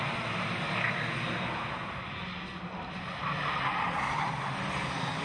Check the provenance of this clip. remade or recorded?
recorded